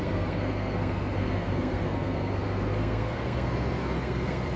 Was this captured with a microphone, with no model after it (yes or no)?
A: no